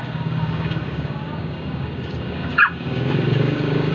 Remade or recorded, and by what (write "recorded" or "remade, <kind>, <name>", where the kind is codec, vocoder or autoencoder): remade, codec, DAC